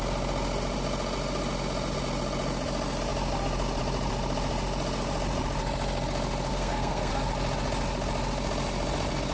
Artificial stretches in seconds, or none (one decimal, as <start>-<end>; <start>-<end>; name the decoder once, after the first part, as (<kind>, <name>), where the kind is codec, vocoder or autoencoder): 6.5-7.1 (codec, SNAC)